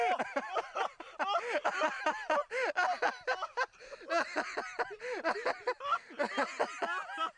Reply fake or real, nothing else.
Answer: real